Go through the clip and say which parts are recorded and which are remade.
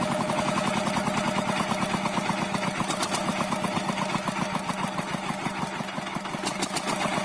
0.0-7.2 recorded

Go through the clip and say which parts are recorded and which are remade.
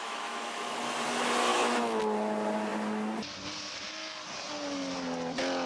0.0-0.8 remade; 0.8-1.5 recorded; 1.5-2.0 remade; 2.0-5.7 recorded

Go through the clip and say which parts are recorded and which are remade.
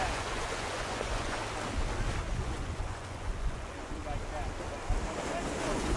0.0-1.4 remade; 1.4-2.3 recorded; 2.3-4.0 remade; 4.0-5.6 recorded; 5.6-6.0 remade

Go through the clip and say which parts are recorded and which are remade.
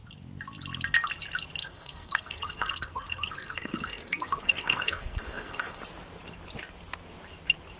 0.0-1.6 recorded; 1.6-5.8 remade; 5.8-7.8 recorded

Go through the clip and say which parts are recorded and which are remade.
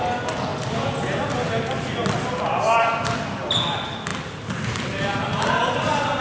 0.0-6.2 recorded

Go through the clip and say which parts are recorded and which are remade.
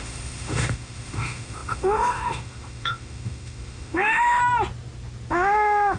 0.0-4.4 remade; 4.4-5.3 recorded; 5.3-6.0 remade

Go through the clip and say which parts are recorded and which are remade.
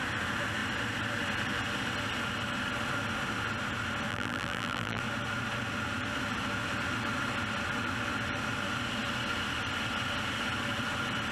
0.0-4.1 recorded; 4.1-5.0 remade; 5.0-11.3 recorded